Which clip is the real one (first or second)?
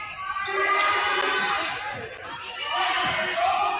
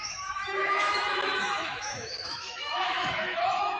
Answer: first